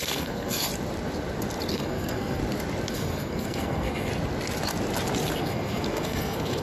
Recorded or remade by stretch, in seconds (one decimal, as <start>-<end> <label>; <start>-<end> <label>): 0.0-0.7 remade; 0.7-1.7 recorded; 1.7-2.4 remade; 2.4-2.9 recorded; 2.9-4.1 remade; 4.1-5.4 recorded; 5.4-6.6 remade